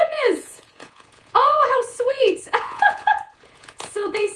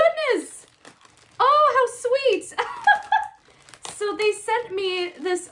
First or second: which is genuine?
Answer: second